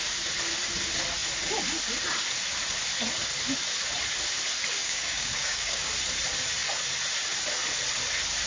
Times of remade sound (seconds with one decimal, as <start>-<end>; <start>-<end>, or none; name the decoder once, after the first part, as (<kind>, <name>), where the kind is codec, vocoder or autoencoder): 4.8-5.9 (codec, DAC)